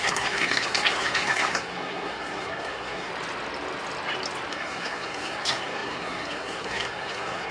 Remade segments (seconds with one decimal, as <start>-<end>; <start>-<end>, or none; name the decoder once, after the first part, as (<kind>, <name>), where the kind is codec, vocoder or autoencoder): 0.0-3.1 (codec, SNAC); 4.5-7.5